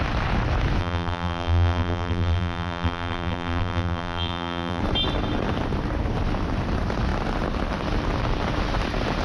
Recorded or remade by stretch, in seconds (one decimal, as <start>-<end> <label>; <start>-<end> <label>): 0.0-0.8 recorded; 0.8-4.8 remade; 4.8-9.2 recorded